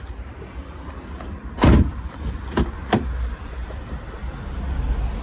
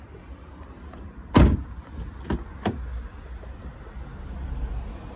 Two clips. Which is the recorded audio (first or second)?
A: second